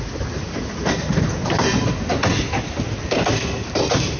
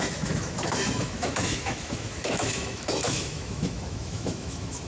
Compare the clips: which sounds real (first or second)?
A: first